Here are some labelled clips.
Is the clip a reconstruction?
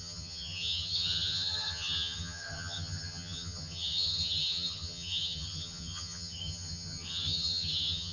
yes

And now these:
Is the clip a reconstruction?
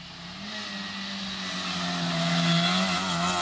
no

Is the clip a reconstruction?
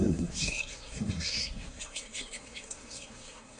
yes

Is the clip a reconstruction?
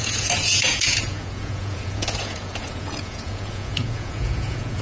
yes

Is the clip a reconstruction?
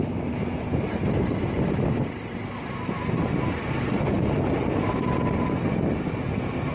no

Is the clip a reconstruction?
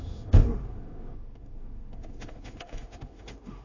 yes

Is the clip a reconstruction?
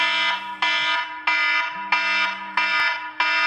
no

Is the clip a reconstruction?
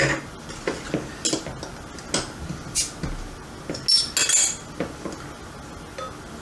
no